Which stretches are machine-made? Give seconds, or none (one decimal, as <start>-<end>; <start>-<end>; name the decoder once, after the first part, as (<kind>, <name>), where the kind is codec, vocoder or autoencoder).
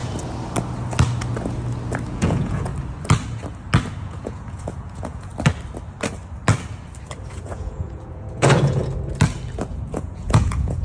2.1-2.7 (vocoder, Vocos); 4.0-5.3; 7.2-8.8; 9.7-10.8